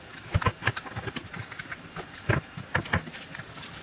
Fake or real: real